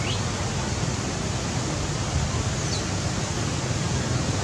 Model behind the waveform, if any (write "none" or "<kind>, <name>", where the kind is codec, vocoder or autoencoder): none